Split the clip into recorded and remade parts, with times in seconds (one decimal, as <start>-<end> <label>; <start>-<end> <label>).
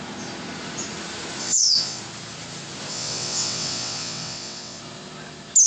0.0-1.4 recorded; 1.4-2.0 remade; 2.0-2.9 recorded; 2.9-4.8 remade; 4.8-5.7 recorded